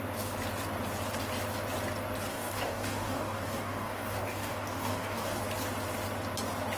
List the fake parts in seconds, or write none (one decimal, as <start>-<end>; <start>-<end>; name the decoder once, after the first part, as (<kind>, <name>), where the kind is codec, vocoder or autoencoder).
2.3-5.4 (codec, DAC)